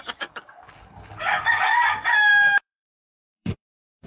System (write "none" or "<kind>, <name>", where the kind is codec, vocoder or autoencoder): codec, DAC